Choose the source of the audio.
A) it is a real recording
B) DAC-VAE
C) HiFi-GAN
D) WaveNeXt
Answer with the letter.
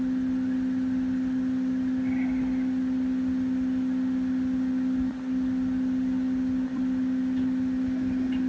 A